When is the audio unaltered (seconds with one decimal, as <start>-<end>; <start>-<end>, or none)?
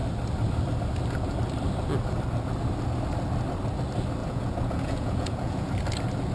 0.0-4.2; 5.7-6.3